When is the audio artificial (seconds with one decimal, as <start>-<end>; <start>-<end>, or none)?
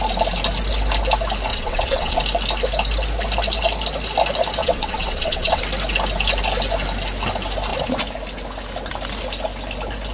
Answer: 1.5-2.2; 4.6-5.6